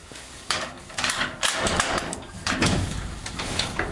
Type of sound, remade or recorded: remade